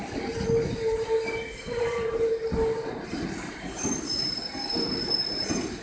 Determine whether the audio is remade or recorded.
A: recorded